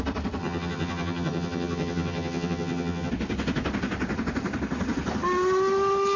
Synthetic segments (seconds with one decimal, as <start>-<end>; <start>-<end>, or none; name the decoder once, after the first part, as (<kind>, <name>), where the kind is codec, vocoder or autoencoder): 0.4-3.1 (vocoder, HiFi-GAN)